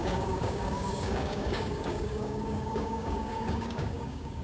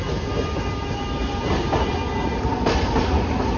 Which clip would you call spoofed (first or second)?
first